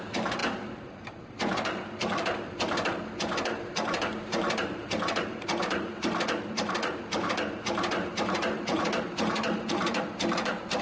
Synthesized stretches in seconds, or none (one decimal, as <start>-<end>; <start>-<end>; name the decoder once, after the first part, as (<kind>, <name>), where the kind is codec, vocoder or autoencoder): 0.0-10.8 (vocoder, BigVGAN v2)